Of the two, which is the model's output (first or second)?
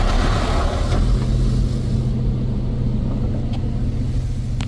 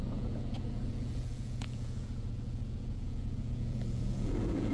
second